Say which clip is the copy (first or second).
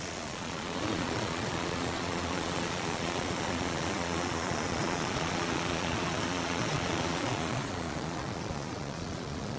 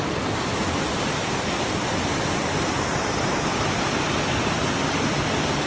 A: first